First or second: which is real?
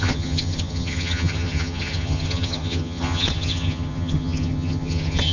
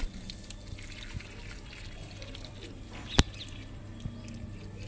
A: second